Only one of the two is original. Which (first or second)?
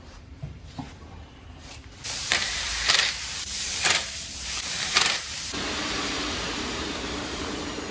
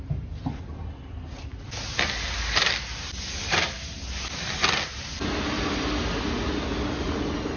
second